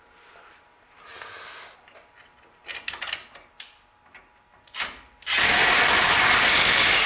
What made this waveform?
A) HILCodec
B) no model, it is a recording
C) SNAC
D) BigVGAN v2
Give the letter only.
B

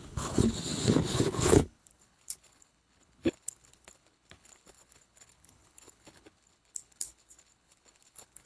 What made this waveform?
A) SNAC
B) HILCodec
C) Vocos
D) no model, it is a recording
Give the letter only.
B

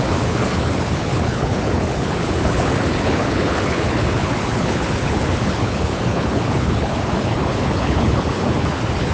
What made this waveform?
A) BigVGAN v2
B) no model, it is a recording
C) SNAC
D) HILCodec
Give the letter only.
D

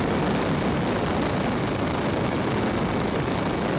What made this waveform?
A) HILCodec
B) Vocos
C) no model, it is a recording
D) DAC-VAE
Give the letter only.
C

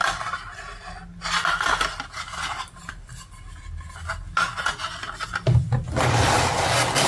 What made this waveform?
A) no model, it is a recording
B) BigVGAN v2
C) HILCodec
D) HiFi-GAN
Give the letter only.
A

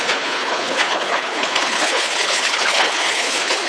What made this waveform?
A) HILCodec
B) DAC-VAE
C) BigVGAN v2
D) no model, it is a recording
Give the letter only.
A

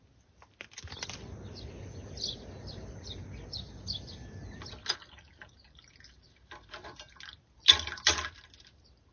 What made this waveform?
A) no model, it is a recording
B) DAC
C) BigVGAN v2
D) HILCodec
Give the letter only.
A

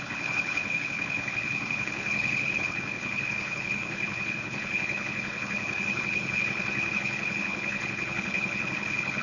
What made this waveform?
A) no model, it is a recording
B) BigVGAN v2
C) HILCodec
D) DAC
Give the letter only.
C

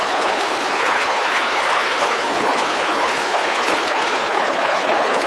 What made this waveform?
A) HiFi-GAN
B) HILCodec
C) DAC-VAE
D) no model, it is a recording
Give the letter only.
B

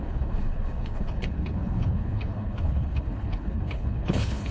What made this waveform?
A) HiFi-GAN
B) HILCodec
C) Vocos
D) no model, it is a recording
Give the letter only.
B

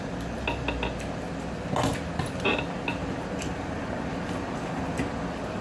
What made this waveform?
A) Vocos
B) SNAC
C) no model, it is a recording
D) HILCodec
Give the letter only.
C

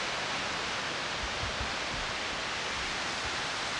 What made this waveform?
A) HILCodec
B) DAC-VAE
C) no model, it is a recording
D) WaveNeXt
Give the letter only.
C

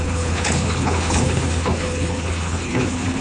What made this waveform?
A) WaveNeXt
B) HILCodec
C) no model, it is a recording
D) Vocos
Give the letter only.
B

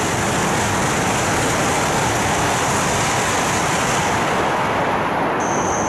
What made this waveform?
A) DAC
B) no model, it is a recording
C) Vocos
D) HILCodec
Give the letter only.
B